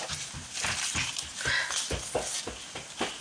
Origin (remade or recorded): recorded